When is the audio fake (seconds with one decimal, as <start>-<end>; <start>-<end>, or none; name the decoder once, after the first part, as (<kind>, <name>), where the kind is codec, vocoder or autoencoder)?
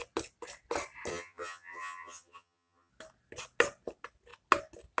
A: 1.1-2.9 (vocoder, HiFi-GAN)